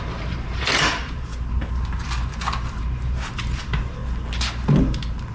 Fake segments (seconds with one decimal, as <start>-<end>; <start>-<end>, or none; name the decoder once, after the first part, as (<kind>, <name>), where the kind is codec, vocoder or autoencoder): 0.0-1.3 (vocoder, BigVGAN v2); 2.7-4.0